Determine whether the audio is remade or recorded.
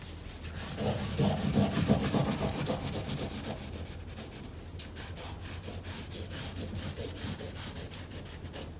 recorded